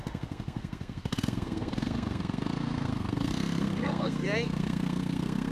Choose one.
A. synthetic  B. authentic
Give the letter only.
A